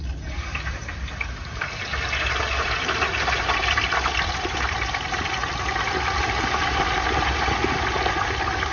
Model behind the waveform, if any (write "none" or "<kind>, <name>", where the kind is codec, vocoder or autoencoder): none